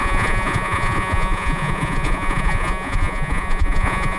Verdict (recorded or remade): remade